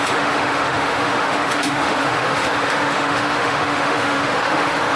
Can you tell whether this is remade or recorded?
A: remade